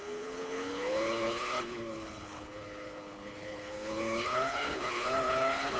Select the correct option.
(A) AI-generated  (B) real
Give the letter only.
A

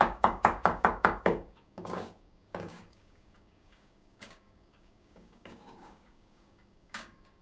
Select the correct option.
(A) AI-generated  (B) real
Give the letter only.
A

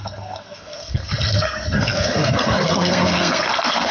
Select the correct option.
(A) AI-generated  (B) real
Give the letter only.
A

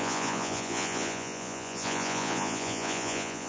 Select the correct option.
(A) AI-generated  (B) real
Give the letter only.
A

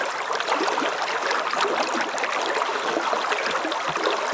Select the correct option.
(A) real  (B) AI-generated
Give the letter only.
A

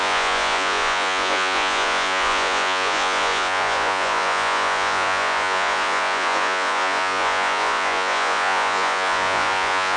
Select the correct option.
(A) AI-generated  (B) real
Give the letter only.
A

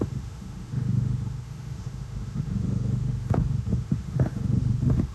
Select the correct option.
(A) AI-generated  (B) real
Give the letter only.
A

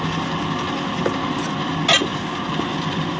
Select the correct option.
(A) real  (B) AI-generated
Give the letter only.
A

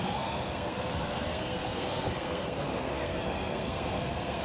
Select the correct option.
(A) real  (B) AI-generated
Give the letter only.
B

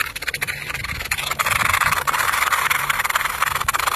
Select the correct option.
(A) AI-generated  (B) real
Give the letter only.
A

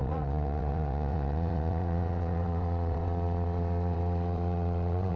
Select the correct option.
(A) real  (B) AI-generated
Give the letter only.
B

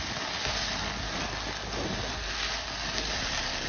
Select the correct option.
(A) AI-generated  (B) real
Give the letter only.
B